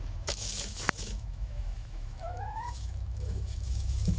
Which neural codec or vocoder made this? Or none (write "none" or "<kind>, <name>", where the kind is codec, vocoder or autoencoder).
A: autoencoder, DAC-VAE